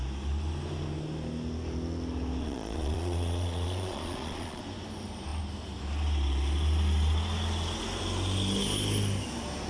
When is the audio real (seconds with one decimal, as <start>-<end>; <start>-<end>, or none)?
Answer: 0.0-2.4; 4.6-9.7